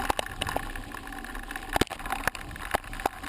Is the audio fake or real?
real